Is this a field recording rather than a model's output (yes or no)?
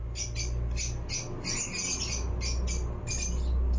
yes